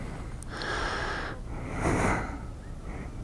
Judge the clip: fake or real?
real